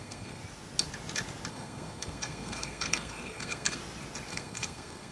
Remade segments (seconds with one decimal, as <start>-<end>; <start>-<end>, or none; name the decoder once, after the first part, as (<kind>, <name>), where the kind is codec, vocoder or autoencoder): 0.0-0.4 (codec, SNAC); 1.5-3.8; 4.3-5.1

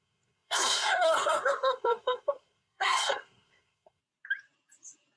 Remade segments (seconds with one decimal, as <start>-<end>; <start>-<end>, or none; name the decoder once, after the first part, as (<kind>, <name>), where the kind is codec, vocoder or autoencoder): 0.0-4.0 (codec, SNAC)

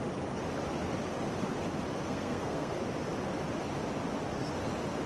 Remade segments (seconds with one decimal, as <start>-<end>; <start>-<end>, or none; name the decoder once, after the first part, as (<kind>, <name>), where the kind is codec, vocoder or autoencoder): 2.0-2.7 (codec, SNAC)